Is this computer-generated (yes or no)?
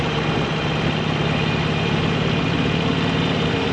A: no